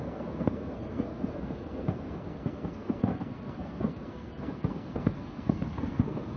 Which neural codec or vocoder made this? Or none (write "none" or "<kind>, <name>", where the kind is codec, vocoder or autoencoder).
codec, SNAC